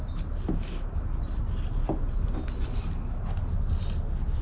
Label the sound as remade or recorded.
recorded